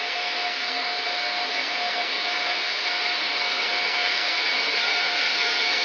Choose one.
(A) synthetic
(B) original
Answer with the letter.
A